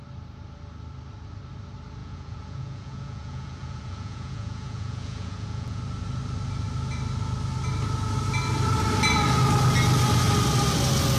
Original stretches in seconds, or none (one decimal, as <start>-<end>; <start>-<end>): 0.0-2.0; 5.8-11.2